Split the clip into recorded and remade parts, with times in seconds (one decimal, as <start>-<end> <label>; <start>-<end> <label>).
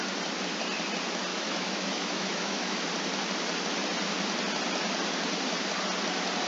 0.0-1.3 recorded; 1.3-2.8 remade; 2.8-6.5 recorded